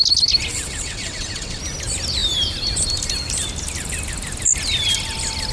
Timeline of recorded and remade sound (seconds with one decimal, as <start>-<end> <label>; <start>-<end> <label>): 0.0-0.5 recorded; 0.5-1.6 remade; 1.6-5.5 recorded